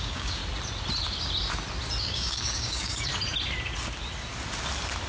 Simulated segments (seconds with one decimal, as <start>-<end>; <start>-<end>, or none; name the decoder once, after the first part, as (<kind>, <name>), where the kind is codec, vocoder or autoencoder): 0.0-0.4 (codec, DAC); 2.0-3.1

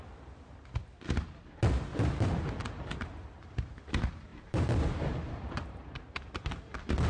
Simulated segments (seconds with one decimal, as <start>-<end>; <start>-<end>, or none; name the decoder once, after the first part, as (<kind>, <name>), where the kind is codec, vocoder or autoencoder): 1.9-3.9 (vocoder, BigVGAN v2); 4.3-7.1

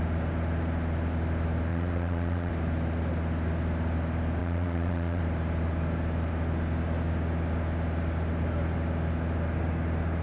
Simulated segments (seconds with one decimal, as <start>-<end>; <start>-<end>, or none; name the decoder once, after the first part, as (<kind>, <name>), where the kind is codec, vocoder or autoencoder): 1.7-2.5 (vocoder, Vocos); 4.4-5.2

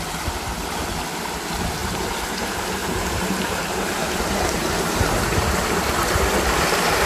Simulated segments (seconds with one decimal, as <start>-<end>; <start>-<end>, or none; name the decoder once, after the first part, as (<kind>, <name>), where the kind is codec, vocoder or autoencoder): 2.8-5.9 (vocoder, BigVGAN v2)

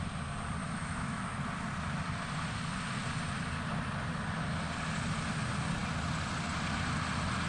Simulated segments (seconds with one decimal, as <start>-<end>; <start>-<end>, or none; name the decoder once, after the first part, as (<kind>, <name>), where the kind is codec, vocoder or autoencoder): 0.6-1.2 (autoencoder, DAC-VAE)

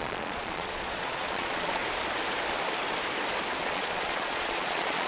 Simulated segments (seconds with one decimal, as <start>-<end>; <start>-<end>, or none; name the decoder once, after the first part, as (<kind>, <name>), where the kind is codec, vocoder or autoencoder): 0.0-1.8 (vocoder, Vocos); 3.6-5.1

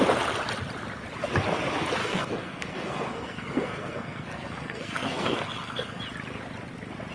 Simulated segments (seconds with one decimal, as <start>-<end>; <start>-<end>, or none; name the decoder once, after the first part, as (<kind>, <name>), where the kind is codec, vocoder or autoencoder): 2.0-6.0 (codec, SNAC)